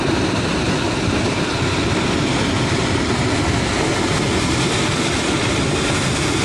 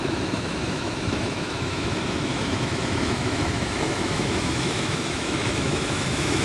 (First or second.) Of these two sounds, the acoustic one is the first